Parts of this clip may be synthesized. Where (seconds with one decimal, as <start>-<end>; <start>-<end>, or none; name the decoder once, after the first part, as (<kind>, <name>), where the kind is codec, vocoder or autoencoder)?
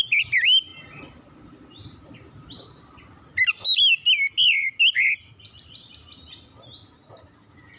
none